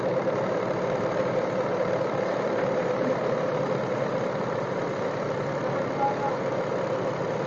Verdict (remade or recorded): recorded